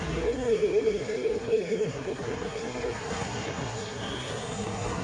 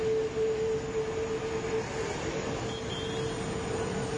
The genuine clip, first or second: second